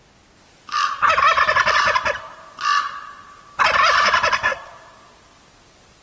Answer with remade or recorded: recorded